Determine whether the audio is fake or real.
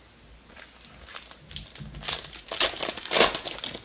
real